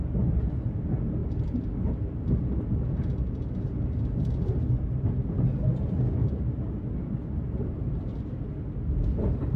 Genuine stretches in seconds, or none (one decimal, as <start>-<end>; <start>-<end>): 0.0-9.6